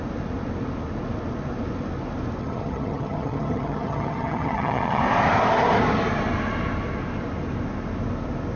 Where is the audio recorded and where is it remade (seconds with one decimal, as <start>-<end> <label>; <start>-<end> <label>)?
0.0-2.4 recorded; 2.4-5.0 remade; 5.0-8.6 recorded